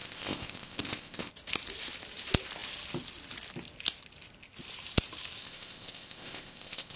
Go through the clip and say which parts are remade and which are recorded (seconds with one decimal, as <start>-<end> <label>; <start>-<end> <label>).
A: 0.0-1.3 remade; 1.3-5.4 recorded; 5.4-7.0 remade